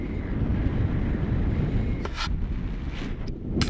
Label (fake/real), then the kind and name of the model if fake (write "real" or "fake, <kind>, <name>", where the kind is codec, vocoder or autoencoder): real